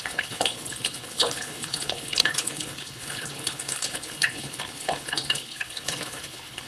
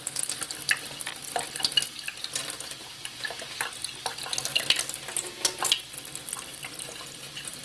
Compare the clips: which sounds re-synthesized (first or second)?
first